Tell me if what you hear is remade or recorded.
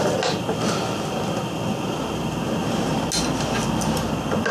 recorded